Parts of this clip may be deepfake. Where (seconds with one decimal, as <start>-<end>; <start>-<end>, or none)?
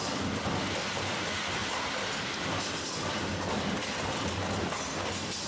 none